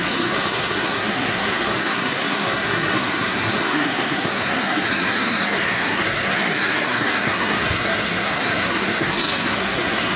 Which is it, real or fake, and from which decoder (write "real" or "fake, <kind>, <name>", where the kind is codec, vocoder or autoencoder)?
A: fake, codec, SNAC